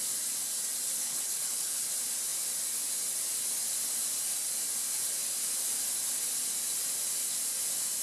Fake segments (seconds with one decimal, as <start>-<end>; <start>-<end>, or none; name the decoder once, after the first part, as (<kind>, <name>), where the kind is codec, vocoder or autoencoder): 0.9-1.9 (codec, HILCodec)